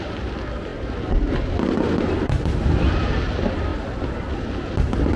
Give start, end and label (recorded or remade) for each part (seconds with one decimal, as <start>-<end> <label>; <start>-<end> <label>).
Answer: 0.0-5.2 recorded